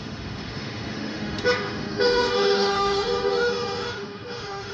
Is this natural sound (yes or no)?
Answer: no